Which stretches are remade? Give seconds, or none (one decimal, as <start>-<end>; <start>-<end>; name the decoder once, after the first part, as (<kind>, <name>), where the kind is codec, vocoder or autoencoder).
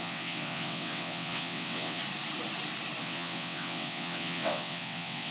0.0-2.0 (vocoder, WaveNeXt); 3.0-5.3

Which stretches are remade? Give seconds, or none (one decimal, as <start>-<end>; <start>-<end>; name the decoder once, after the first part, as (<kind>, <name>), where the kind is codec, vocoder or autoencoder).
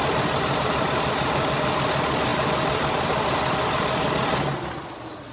none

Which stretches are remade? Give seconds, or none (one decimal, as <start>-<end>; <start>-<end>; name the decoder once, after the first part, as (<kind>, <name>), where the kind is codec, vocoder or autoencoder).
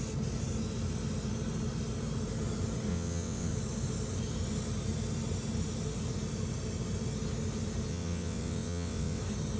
2.9-3.5 (vocoder, WaveNeXt); 7.9-9.2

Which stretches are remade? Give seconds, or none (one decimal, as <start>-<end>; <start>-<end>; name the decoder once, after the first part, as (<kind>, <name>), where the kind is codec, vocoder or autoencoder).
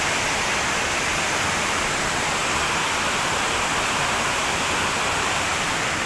none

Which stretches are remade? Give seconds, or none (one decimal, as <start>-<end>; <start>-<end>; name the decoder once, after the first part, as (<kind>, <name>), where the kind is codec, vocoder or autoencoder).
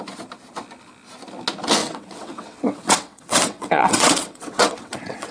1.8-5.3 (vocoder, WaveNeXt)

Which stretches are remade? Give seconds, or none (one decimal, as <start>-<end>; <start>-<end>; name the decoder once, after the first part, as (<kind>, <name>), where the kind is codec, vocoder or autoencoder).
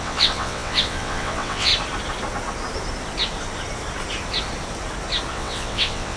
0.0-1.7 (vocoder, WaveNeXt); 5.3-6.2